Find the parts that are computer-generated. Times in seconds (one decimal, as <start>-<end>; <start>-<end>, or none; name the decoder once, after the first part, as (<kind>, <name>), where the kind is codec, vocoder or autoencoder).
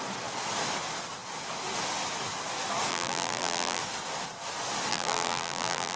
2.9-3.8 (vocoder, BigVGAN v2); 4.9-6.0